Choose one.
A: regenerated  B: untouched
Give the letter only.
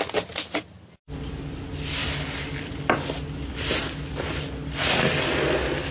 B